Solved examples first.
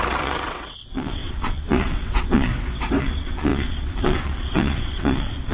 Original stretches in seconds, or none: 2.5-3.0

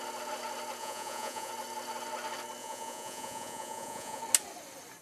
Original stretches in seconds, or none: 0.0-0.8; 1.5-2.6; 4.2-5.0